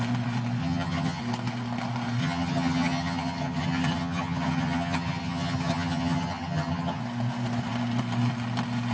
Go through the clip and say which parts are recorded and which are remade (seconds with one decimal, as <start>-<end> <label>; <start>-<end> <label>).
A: 0.0-0.6 recorded; 0.6-1.2 remade; 1.2-2.2 recorded; 2.2-7.0 remade; 7.0-8.9 recorded